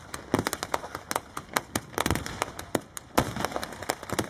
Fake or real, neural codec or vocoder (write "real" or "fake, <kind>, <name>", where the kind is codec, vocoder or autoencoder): real